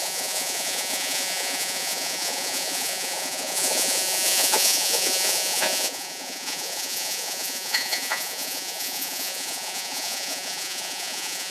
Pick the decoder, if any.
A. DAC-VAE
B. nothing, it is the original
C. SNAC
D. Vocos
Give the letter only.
D